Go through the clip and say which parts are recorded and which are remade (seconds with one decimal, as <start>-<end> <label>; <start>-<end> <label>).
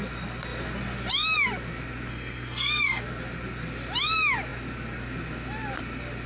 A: 0.0-2.1 recorded; 2.1-3.0 remade; 3.0-6.3 recorded